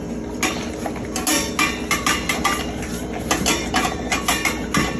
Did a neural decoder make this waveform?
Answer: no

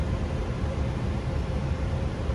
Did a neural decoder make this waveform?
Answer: yes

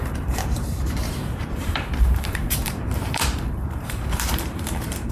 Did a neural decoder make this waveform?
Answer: yes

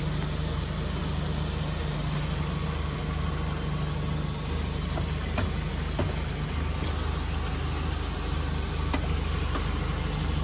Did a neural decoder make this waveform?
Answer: no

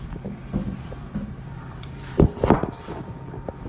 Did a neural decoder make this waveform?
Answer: yes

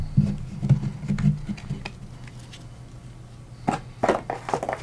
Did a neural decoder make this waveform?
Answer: no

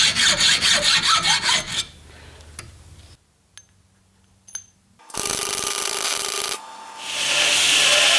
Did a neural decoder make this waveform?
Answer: no